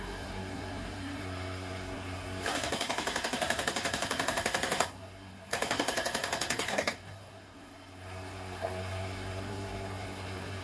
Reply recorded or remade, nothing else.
remade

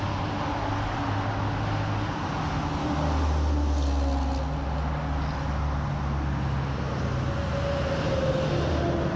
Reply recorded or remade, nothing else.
recorded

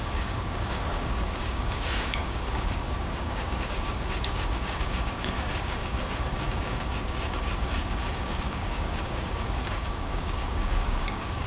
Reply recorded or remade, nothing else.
remade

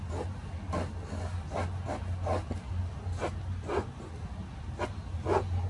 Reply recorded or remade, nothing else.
recorded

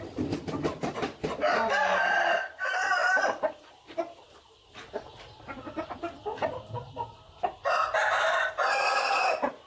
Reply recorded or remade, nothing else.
recorded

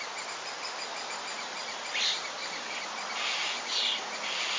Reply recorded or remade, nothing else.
recorded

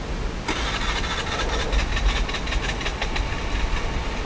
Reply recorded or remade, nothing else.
recorded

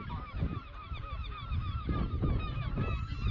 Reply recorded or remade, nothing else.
recorded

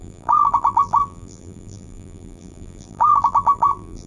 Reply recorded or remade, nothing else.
remade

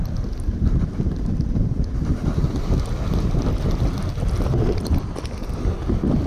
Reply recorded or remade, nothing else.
recorded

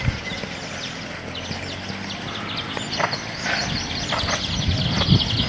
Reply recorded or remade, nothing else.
recorded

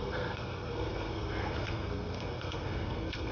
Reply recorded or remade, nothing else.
remade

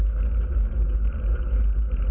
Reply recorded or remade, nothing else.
recorded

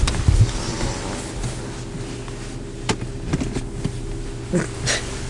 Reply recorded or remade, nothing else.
recorded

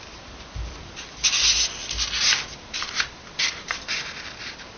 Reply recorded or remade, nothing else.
remade